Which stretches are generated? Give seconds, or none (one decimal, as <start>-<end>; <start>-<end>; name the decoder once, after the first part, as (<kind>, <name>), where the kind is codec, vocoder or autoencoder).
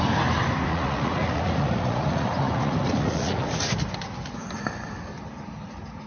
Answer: 0.7-3.5 (vocoder, Vocos)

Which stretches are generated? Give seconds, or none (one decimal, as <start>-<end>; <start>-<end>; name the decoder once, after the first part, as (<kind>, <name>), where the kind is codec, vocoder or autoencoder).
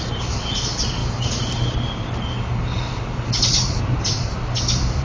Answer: none